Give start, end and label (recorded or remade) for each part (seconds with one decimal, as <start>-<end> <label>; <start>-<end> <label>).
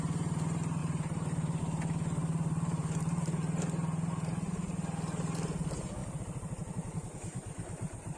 0.0-0.8 recorded; 0.8-1.6 remade; 1.6-6.0 recorded; 6.0-8.2 remade